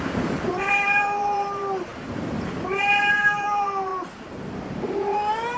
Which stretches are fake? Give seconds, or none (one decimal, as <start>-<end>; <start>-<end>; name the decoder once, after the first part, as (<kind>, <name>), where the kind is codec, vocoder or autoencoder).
0.0-5.6 (vocoder, BigVGAN v2)